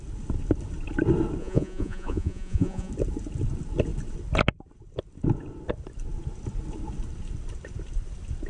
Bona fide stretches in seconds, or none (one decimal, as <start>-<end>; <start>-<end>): 0.0-1.4; 2.9-8.5